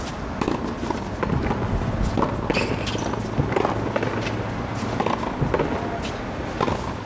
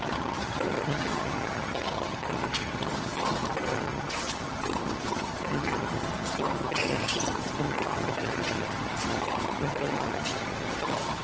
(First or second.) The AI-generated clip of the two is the second